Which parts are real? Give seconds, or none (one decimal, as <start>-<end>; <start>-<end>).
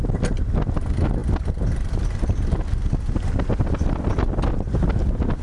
0.0-5.4